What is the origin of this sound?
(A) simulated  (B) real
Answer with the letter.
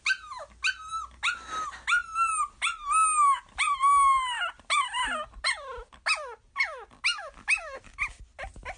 B